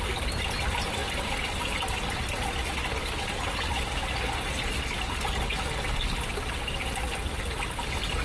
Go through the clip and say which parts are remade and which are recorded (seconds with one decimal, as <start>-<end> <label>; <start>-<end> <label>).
0.0-8.2 recorded